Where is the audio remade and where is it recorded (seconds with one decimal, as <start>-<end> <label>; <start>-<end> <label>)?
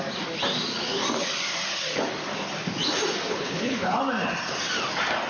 0.0-3.3 recorded; 3.3-4.0 remade; 4.0-5.3 recorded